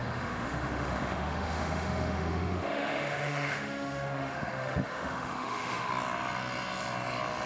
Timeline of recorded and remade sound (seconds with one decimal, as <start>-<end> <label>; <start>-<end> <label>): 0.0-5.9 remade; 5.9-7.5 recorded